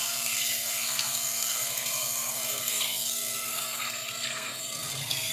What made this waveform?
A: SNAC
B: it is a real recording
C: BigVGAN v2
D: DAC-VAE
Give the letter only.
A